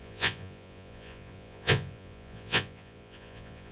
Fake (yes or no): yes